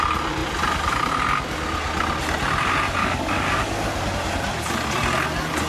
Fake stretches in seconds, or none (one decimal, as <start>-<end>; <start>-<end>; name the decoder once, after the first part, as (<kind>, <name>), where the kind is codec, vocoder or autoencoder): 3.0-4.1 (codec, DAC)